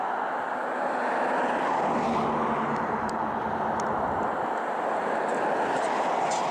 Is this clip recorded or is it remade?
recorded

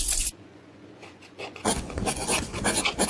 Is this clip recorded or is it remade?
remade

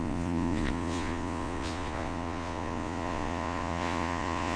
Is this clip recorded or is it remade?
remade